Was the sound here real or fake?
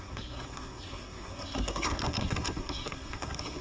fake